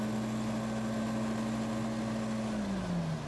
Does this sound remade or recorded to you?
recorded